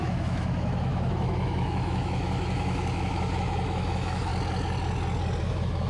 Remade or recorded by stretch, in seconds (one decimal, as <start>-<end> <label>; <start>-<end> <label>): 0.0-4.3 remade; 4.3-5.4 recorded; 5.4-5.9 remade